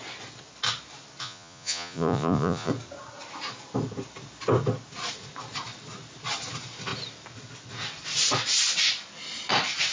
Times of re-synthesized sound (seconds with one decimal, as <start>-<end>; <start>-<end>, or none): 1.2-2.7